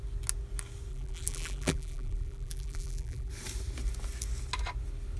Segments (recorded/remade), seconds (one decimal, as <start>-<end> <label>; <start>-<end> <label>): 0.0-0.9 recorded; 0.9-3.3 remade; 3.3-5.2 recorded